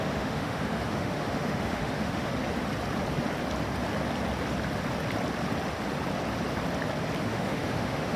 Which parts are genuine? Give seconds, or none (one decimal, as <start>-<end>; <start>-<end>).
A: 2.3-7.2